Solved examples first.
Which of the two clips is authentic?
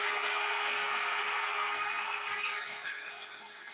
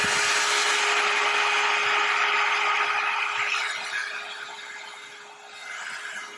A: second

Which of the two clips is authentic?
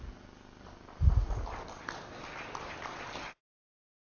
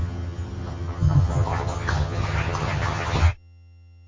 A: first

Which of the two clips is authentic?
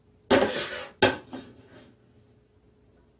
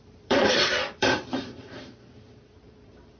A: first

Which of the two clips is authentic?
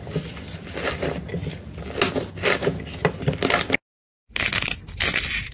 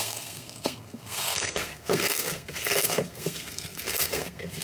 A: first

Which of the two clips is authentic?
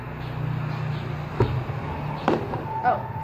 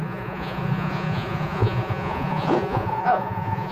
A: first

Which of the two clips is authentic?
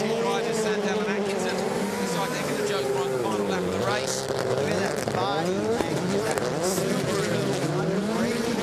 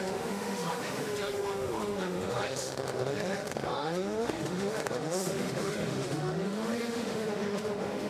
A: first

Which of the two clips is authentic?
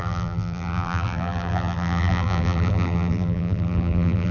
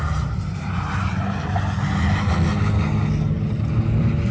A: second